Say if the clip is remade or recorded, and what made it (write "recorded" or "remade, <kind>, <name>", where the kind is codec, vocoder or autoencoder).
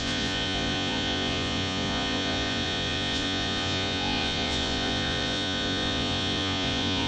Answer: remade, vocoder, Vocos